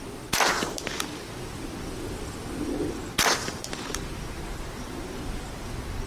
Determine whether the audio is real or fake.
real